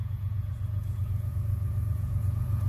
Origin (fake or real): fake